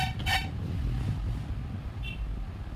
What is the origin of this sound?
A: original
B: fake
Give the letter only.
A